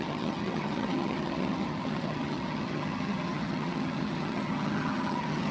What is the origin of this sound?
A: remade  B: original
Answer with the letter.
A